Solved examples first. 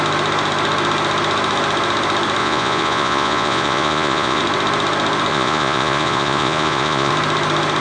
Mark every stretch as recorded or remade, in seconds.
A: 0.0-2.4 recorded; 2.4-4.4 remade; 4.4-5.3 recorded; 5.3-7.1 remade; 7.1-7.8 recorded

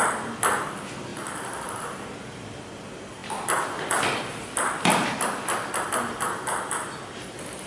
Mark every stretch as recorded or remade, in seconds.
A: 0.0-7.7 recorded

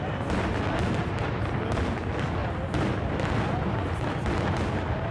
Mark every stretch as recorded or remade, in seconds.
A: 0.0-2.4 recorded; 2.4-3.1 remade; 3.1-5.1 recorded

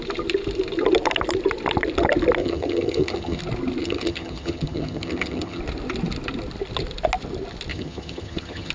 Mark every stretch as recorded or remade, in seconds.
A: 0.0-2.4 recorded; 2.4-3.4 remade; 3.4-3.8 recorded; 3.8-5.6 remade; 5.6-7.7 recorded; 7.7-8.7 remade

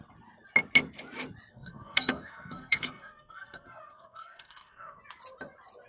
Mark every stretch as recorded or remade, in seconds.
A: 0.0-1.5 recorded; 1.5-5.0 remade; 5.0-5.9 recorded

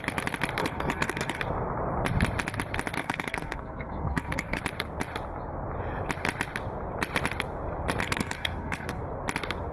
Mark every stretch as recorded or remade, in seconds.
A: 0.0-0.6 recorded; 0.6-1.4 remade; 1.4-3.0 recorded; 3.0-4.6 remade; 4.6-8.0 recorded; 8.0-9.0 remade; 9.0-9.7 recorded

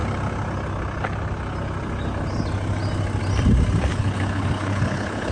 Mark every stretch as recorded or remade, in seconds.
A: 0.0-3.9 recorded; 3.9-5.3 remade